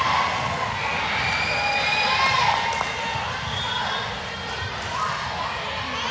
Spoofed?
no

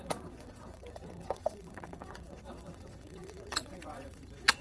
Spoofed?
yes